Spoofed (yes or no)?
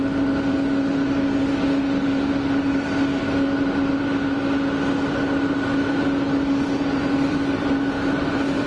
no